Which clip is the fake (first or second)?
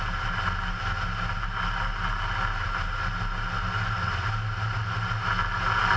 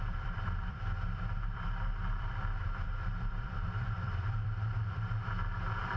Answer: second